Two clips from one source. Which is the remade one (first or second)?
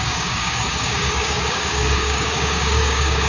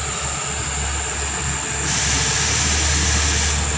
first